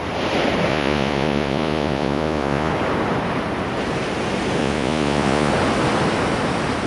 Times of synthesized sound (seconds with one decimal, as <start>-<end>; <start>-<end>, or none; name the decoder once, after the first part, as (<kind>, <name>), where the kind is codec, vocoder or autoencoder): 0.7-2.7 (vocoder, Vocos); 4.6-5.5

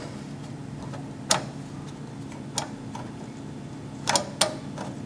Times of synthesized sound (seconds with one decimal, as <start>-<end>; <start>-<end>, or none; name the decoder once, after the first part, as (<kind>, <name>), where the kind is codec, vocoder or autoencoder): none

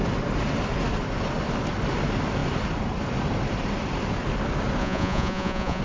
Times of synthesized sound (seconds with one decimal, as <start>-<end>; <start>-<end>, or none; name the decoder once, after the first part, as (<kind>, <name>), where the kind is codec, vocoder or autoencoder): 4.8-5.8 (vocoder, Vocos)